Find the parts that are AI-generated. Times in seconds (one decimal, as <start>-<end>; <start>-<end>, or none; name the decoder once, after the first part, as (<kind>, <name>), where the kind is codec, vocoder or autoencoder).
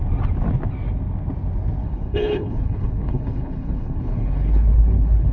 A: 1.8-5.3 (codec, HILCodec)